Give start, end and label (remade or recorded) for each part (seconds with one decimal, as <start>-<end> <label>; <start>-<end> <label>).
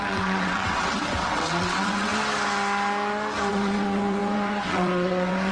0.0-2.1 remade; 2.1-3.5 recorded; 3.5-5.5 remade